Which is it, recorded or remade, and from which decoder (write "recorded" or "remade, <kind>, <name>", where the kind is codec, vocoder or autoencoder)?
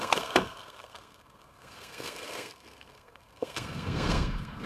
remade, codec, SNAC